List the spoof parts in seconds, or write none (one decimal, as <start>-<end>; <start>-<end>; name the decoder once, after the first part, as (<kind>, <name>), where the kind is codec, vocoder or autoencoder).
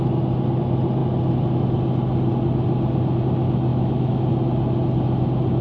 3.7-4.2 (autoencoder, DAC-VAE)